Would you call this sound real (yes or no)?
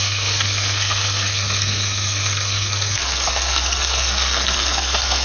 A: no